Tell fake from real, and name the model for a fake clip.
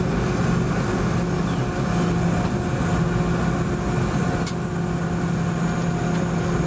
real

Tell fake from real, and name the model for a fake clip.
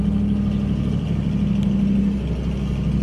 real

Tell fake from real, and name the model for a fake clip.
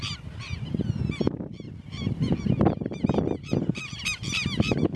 real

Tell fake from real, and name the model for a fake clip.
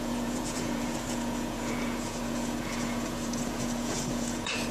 fake, vocoder, Vocos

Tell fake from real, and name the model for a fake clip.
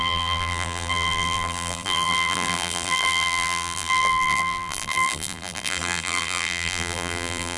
fake, vocoder, BigVGAN v2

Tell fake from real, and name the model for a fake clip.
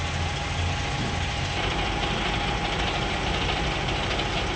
real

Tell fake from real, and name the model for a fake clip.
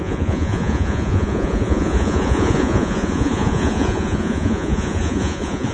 fake, vocoder, Vocos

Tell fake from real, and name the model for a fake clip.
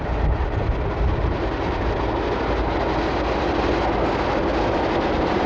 real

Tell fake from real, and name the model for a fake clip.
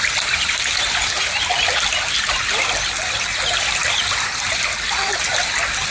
real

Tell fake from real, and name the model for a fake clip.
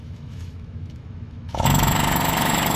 fake, autoencoder, DAC-VAE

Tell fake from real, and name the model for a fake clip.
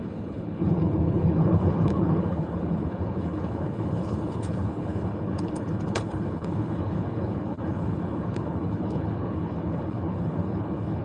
fake, codec, HILCodec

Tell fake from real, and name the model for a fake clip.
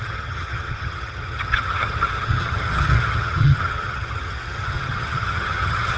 fake, vocoder, HiFi-GAN